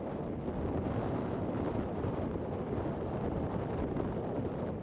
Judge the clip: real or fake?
real